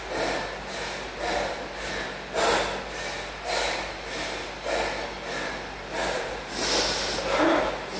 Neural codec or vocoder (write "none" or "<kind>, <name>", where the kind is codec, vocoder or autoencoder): none